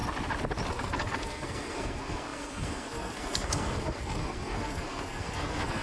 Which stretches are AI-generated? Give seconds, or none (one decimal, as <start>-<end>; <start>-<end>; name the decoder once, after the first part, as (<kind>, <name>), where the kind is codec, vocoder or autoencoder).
0.7-5.8 (codec, SNAC)